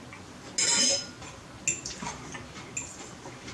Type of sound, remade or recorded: recorded